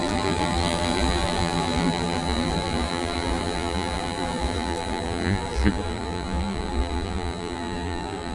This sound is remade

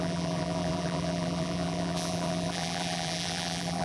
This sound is remade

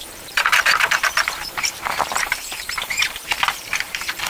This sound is remade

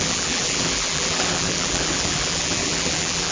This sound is remade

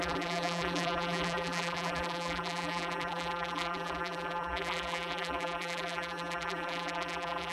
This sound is remade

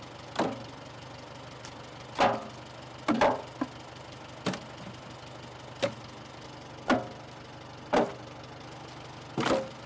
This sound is recorded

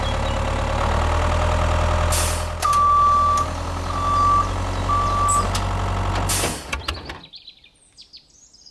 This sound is recorded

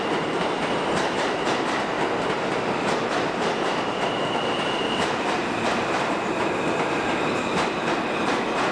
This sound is recorded